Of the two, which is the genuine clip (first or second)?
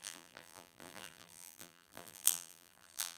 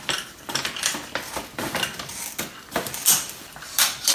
second